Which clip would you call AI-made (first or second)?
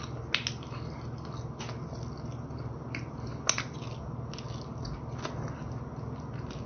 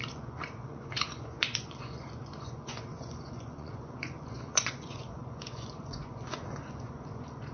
second